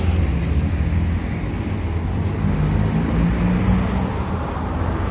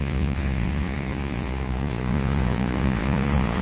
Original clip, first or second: first